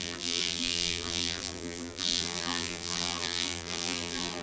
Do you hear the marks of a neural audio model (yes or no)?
yes